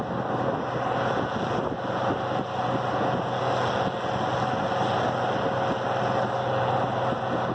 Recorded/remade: recorded